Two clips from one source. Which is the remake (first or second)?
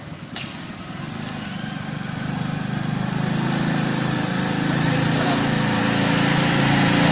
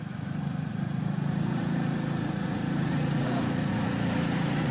second